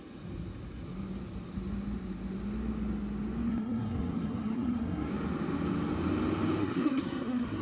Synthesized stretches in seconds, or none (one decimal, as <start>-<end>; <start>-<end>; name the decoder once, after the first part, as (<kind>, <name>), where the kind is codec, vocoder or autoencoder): 3.5-5.1 (codec, SNAC); 6.6-7.6